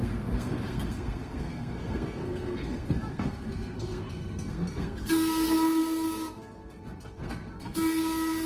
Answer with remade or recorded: remade